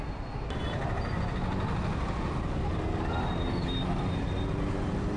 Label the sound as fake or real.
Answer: real